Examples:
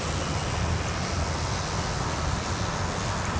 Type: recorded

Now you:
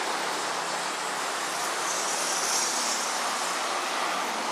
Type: recorded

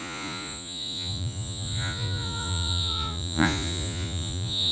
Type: remade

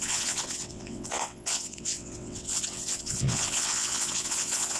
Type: remade